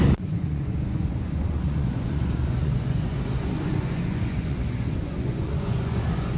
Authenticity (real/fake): fake